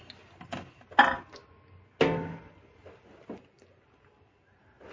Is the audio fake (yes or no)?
no